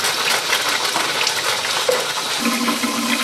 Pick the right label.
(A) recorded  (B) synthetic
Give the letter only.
A